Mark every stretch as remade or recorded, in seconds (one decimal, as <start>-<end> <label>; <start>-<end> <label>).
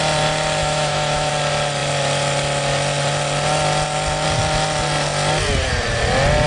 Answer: 0.0-0.6 recorded; 0.6-1.3 remade; 1.3-6.5 recorded